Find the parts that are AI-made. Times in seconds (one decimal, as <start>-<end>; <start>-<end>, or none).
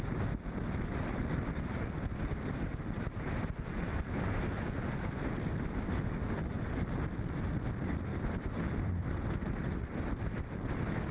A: 8.1-9.2